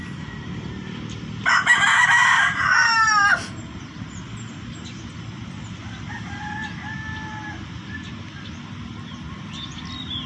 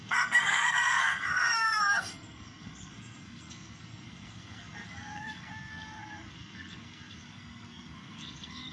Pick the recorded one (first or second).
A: first